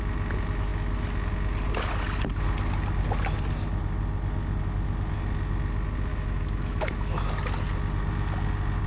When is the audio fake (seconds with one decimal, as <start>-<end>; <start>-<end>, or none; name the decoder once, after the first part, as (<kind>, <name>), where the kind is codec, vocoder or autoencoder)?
6.1-7.3 (autoencoder, DAC-VAE)